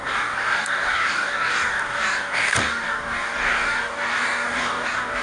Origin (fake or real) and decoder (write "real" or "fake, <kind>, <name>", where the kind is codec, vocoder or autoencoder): fake, codec, DAC